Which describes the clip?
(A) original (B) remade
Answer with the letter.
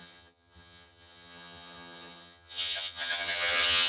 B